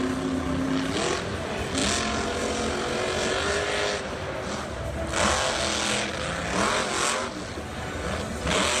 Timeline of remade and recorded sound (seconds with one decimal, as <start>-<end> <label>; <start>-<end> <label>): 0.0-8.8 recorded

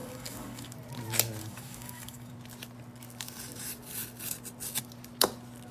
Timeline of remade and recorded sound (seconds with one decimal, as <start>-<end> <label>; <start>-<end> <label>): 0.0-0.7 remade; 0.7-1.4 recorded; 1.4-2.3 remade; 2.3-5.7 recorded

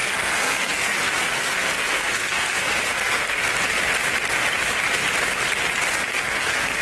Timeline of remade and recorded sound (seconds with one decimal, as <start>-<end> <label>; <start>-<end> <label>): 0.0-3.4 remade; 3.4-6.1 recorded; 6.1-6.8 remade

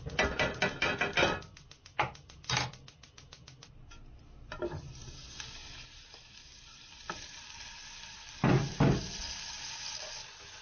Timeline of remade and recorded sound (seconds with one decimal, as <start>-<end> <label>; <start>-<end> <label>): 0.0-5.6 recorded; 5.6-6.2 remade; 6.2-10.6 recorded

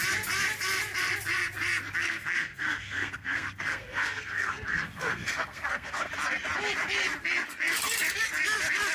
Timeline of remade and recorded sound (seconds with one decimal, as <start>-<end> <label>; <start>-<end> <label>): 0.0-2.0 recorded; 2.0-6.1 remade; 6.1-8.9 recorded

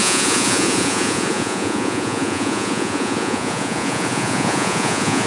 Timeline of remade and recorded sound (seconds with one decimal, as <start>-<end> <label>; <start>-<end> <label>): 0.0-5.3 remade

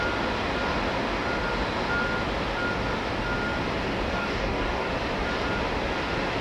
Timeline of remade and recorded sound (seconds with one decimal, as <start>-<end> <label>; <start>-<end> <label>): 0.0-4.2 recorded; 4.2-4.9 remade; 4.9-6.4 recorded

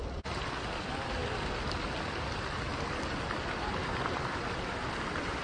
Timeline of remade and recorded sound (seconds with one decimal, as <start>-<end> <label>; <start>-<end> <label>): 0.0-5.4 recorded